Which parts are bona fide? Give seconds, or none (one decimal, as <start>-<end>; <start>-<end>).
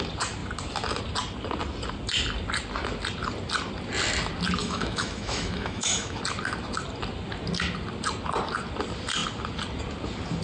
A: 0.0-4.6; 6.2-10.4